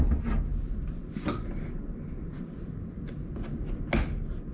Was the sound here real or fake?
real